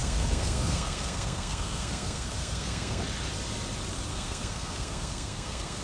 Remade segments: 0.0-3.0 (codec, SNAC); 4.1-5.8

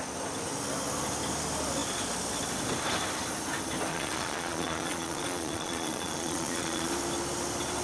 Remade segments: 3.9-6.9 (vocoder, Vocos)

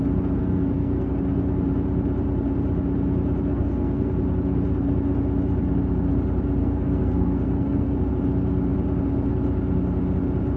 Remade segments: 0.4-1.1 (codec, SNAC); 3.5-4.2; 6.6-8.1

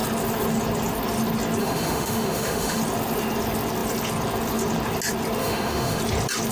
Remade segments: 1.6-2.8 (autoencoder, DAC-VAE); 5.4-6.0

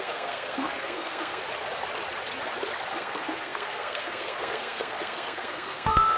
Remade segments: 0.0-1.4 (codec, SNAC); 2.9-6.2

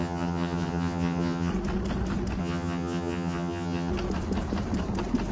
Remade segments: 0.0-1.5 (vocoder, HiFi-GAN); 2.4-3.9

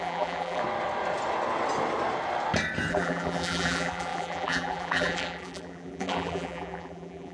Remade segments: 0.0-0.6 (vocoder, BigVGAN v2); 2.9-7.3